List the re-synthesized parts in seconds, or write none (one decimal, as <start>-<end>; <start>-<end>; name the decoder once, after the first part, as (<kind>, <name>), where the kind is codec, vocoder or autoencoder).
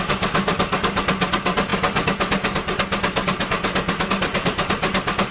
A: none